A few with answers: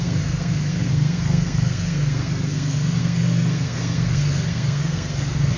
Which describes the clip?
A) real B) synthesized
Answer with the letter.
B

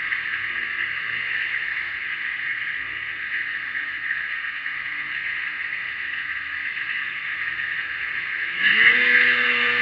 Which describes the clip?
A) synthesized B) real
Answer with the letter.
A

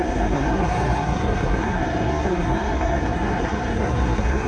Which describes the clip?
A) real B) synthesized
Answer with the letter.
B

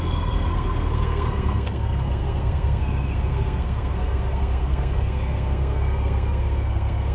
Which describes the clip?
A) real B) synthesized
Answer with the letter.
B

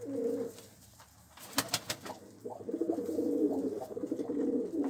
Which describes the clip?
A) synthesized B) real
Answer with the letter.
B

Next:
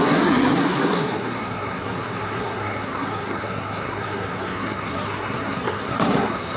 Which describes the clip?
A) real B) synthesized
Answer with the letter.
B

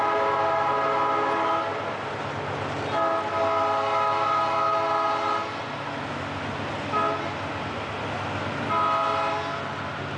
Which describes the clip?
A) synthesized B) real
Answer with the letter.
B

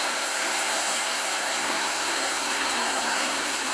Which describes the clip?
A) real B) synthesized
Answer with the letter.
B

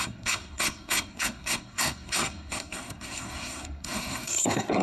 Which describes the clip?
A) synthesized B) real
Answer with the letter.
A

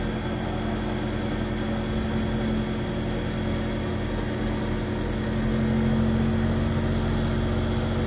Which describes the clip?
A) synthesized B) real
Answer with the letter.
B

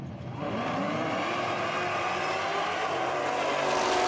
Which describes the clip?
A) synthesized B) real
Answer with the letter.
B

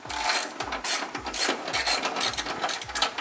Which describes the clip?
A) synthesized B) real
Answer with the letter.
B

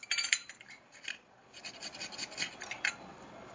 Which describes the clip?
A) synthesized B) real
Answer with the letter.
B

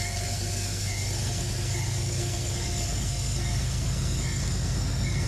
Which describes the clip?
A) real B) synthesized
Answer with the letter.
B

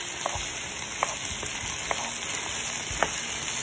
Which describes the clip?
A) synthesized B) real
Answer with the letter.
B